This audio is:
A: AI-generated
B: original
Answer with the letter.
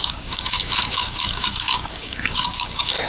A